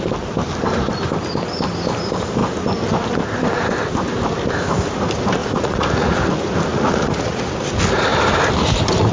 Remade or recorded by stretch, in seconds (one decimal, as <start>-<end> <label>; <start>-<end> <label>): 0.0-5.4 recorded; 5.4-6.2 remade; 6.2-6.7 recorded; 6.7-7.5 remade; 7.5-9.1 recorded